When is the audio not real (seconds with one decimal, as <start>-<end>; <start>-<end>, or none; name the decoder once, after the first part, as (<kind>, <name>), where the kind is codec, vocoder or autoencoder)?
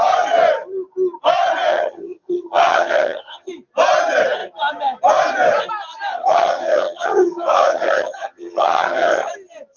1.7-3.5 (vocoder, HiFi-GAN); 6.1-9.3